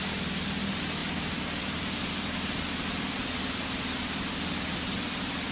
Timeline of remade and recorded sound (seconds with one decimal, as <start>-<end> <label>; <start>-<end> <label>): 0.0-5.5 recorded